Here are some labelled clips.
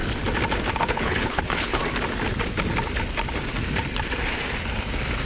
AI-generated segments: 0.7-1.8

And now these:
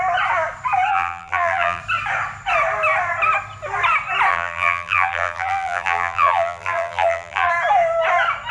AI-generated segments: 0.9-1.8; 4.3-7.5

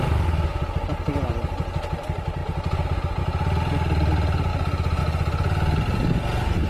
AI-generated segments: none